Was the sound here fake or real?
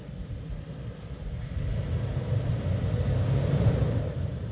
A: real